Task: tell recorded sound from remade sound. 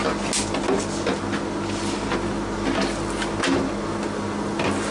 recorded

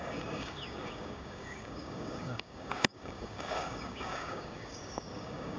remade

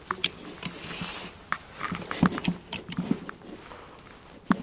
recorded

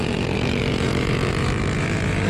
remade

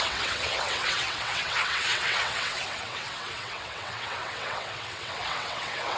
remade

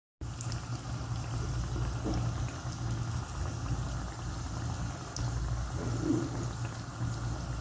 recorded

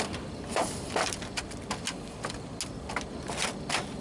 recorded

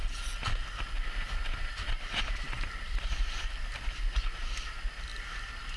recorded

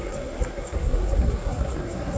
remade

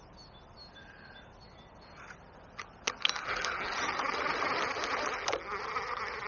recorded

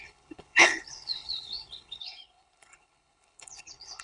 remade